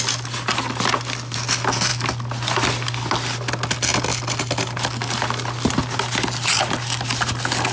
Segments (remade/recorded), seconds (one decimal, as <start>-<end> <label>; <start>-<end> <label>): 0.0-7.7 recorded